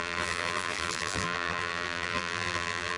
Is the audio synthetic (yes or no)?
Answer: yes